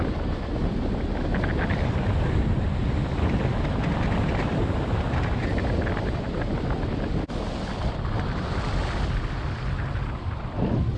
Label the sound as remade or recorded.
recorded